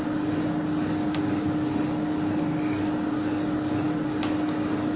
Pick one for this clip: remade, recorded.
recorded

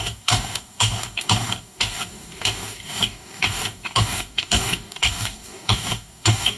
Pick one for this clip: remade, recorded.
remade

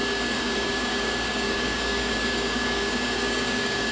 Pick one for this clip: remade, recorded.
remade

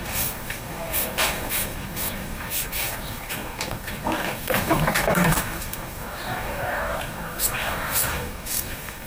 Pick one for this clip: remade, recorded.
remade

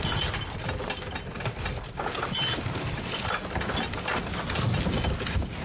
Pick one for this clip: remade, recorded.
recorded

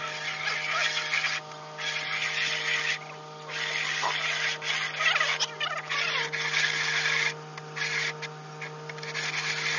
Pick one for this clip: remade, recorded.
recorded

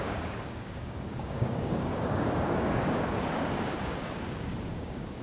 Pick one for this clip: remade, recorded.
remade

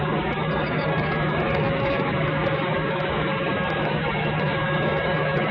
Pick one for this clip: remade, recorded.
remade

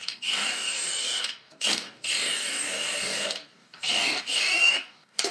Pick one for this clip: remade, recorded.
remade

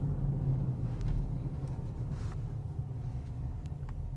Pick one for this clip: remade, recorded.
remade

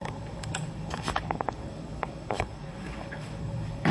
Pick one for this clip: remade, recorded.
remade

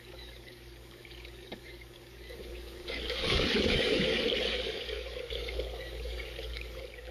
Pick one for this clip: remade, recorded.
remade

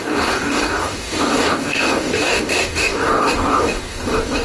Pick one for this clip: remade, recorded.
remade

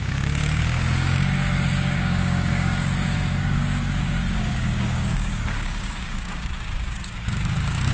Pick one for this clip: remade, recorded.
remade